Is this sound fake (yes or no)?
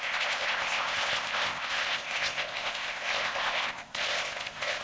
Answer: yes